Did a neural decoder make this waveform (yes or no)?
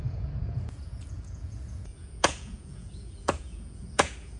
yes